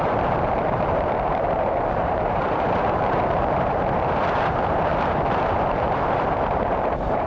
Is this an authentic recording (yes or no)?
no